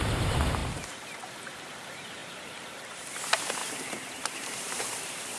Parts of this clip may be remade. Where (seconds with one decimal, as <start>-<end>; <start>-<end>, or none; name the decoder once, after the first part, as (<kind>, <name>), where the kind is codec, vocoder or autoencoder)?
0.0-5.4 (vocoder, BigVGAN v2)